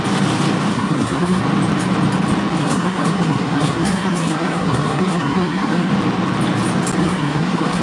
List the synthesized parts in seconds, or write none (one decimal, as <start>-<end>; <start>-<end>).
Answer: 0.7-1.4; 2.6-5.9; 7.0-7.8